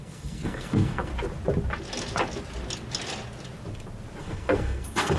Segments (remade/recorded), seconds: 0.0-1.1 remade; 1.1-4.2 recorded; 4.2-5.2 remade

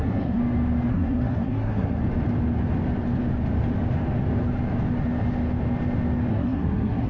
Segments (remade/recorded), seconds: 0.0-0.4 remade; 0.4-0.9 recorded; 0.9-2.0 remade; 2.0-6.3 recorded; 6.3-7.1 remade

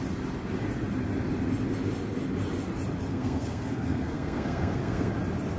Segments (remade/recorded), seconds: 0.0-3.1 recorded; 3.1-5.1 remade; 5.1-5.6 recorded

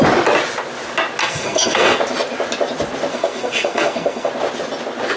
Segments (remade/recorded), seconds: 0.0-1.2 recorded; 1.2-2.0 remade; 2.0-3.1 recorded; 3.1-4.3 remade; 4.3-5.2 recorded